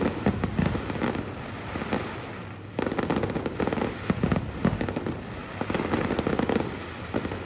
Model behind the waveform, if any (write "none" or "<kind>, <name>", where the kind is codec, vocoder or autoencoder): none